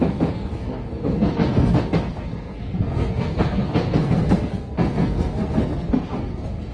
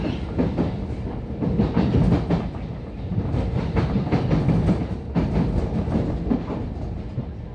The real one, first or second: second